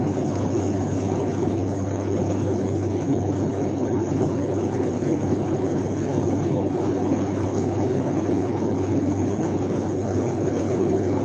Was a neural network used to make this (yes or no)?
yes